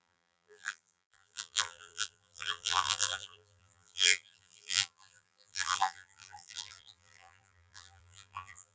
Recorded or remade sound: remade